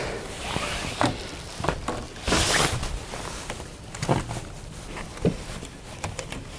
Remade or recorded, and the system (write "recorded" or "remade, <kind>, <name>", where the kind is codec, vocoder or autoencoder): recorded